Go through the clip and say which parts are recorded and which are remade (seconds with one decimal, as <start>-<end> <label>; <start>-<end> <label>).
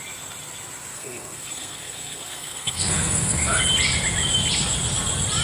0.0-0.9 recorded; 0.9-3.6 remade; 3.6-5.4 recorded